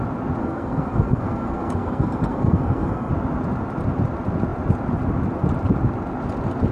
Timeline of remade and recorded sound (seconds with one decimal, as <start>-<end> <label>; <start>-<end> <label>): 0.0-0.4 recorded; 0.4-3.1 remade; 3.1-6.7 recorded